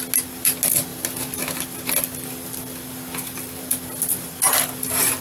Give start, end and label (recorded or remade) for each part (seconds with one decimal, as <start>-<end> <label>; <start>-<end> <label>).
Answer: 0.0-5.2 recorded